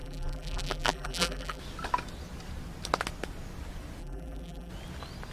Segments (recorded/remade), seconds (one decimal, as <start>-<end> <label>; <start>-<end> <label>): 0.0-1.6 remade; 1.6-4.0 recorded; 4.0-4.7 remade; 4.7-5.3 recorded